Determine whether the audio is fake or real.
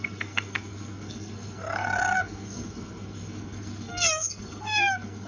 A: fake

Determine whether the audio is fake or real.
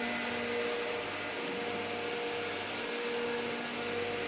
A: real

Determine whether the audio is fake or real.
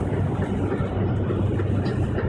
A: real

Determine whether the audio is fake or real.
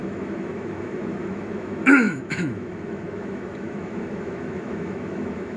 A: fake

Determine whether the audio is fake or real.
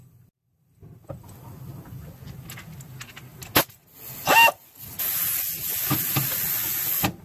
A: real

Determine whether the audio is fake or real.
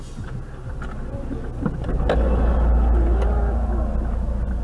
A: real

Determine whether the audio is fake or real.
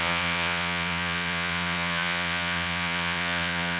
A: fake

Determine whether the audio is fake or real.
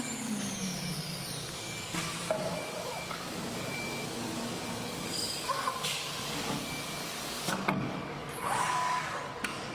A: fake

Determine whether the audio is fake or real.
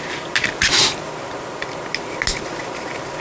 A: real